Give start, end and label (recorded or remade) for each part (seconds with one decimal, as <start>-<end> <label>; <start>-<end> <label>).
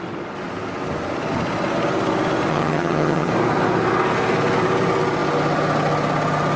0.0-2.5 recorded; 2.5-3.3 remade; 3.3-6.6 recorded